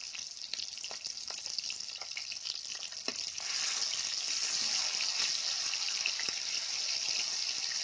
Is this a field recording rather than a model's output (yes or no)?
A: yes